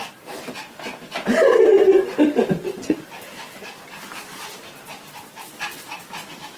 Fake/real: fake